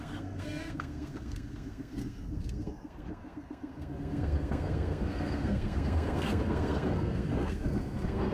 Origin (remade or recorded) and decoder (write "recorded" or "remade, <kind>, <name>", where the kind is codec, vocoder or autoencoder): remade, codec, SNAC